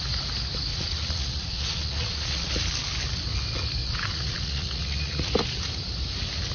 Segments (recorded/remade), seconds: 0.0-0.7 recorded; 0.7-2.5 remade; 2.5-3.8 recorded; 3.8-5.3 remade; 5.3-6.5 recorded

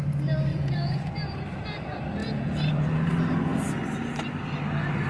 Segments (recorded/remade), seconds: 0.0-0.5 recorded; 0.5-1.1 remade; 1.1-2.2 recorded; 2.2-3.1 remade; 3.1-5.1 recorded

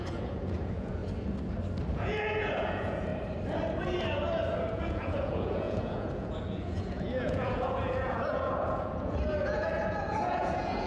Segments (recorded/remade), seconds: 0.0-1.0 remade; 1.0-1.9 recorded; 1.9-3.1 remade; 3.1-4.7 recorded; 4.7-10.9 remade

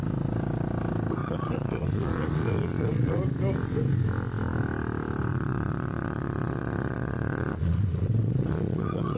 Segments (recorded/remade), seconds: 0.0-1.2 recorded; 1.2-3.2 remade; 3.2-5.3 recorded; 5.3-9.2 remade

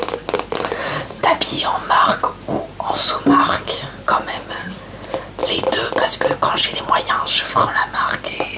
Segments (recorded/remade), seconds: 0.0-0.8 recorded; 0.8-1.4 remade; 1.4-8.6 recorded